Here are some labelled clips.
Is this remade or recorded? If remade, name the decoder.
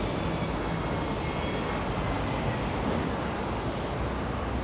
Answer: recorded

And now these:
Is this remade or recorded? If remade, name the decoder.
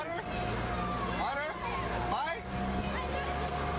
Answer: recorded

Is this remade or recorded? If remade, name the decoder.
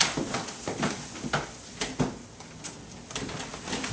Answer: recorded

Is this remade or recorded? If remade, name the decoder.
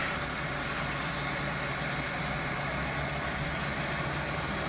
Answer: recorded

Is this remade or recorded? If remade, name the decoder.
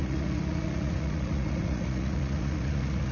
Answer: remade, vocoder, Vocos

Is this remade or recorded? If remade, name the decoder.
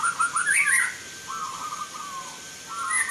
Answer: recorded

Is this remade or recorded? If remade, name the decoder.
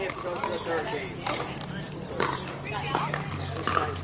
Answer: recorded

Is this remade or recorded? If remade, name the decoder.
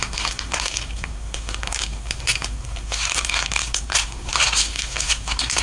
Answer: remade, codec, SNAC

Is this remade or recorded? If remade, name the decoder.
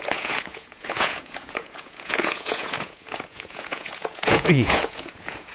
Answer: remade, vocoder, Vocos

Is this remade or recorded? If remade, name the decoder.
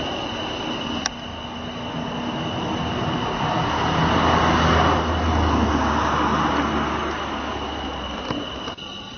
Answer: recorded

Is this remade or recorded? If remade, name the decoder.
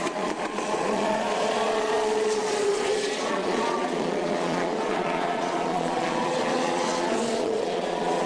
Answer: remade, vocoder, Vocos